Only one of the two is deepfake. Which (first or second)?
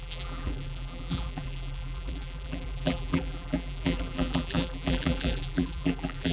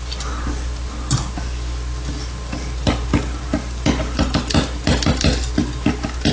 first